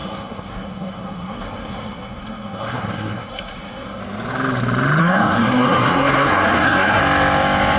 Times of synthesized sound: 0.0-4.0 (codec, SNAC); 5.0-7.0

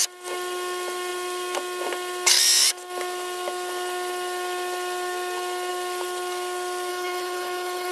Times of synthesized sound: 6.9-7.9 (codec, HILCodec)